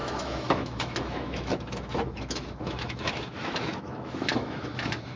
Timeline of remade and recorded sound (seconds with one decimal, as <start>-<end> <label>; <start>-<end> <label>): 0.0-5.2 remade